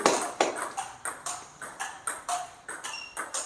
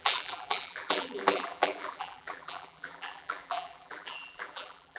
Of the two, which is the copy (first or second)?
second